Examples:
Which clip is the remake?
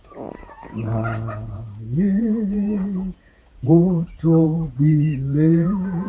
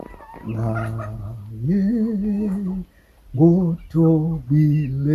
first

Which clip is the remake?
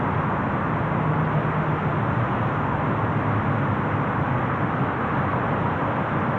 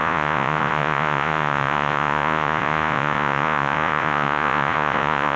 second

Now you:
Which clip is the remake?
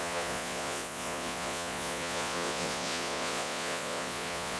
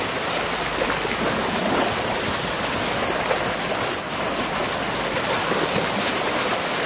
first